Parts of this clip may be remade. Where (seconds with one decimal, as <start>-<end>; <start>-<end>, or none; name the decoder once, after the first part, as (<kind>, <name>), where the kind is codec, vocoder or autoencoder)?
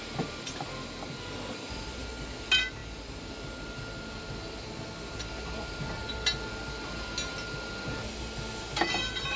none